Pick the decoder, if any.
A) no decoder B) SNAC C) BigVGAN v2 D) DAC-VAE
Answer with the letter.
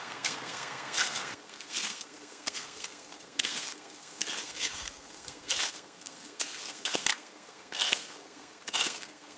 B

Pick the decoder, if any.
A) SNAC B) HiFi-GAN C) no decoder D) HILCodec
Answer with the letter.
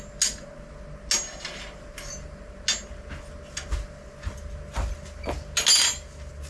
C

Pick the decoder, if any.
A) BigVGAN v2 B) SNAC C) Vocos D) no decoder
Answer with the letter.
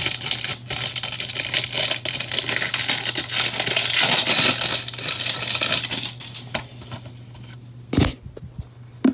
D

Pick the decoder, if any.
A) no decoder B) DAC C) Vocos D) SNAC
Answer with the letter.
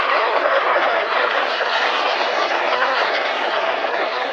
D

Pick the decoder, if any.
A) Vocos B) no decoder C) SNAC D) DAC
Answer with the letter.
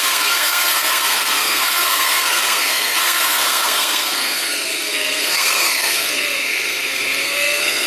C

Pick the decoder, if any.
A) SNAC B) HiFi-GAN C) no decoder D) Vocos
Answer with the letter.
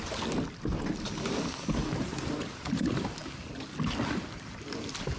C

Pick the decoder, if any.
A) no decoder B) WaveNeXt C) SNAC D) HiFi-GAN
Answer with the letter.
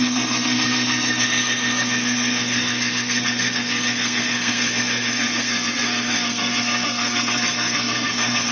C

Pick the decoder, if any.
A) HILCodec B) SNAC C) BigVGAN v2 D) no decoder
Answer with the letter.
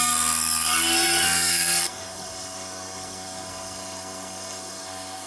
B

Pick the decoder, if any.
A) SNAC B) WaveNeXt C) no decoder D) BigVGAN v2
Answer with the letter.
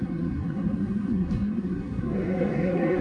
A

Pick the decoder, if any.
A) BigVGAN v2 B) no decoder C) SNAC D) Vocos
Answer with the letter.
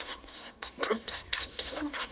C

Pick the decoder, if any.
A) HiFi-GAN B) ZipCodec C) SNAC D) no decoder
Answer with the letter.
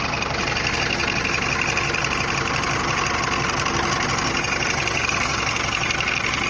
D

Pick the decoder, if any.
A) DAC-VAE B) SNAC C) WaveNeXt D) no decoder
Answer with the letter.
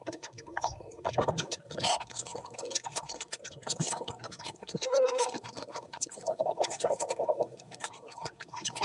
B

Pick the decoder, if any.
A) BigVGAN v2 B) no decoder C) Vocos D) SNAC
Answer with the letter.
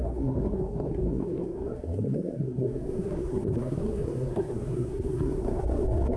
D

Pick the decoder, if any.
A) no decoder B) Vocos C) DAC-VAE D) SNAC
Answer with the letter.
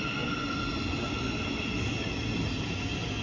A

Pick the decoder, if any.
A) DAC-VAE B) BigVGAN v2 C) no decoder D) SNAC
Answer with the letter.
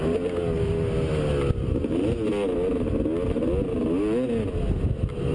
C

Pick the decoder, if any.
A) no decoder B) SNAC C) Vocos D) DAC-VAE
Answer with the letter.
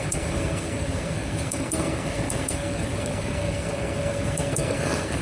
B